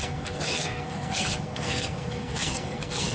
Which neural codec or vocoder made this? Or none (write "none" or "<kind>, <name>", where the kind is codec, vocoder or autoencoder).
codec, SNAC